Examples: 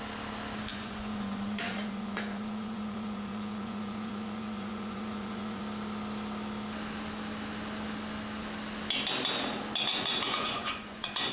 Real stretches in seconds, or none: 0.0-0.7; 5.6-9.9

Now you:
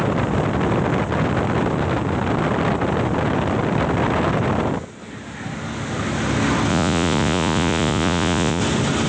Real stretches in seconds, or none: 0.0-6.7; 8.6-9.1

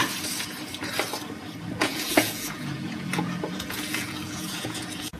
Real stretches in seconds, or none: 0.0-1.8